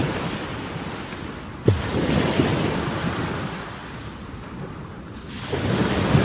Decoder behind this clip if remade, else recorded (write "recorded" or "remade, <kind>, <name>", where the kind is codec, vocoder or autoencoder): recorded